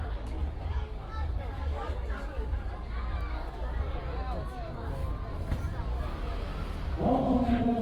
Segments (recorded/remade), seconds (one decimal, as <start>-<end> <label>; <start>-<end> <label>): 0.0-5.0 remade; 5.0-5.8 recorded; 5.8-6.5 remade; 6.5-7.8 recorded